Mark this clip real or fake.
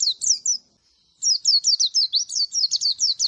real